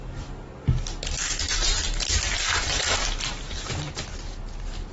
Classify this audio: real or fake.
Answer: real